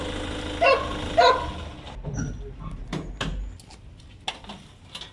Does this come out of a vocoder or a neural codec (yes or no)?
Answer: no